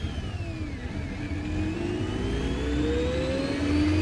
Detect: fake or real real